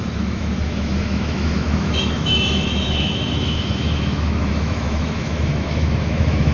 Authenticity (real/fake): fake